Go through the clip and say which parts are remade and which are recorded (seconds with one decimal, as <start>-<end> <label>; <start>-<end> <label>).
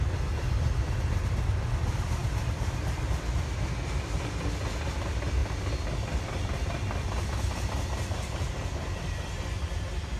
0.0-10.2 recorded